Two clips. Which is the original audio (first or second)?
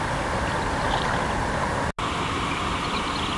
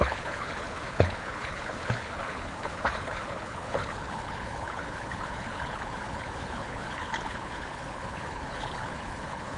first